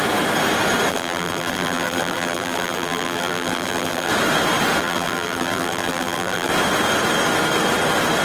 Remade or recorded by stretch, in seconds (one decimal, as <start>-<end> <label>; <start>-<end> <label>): 0.0-0.9 recorded; 0.9-4.1 remade; 4.1-4.8 recorded; 4.8-6.5 remade; 6.5-8.2 recorded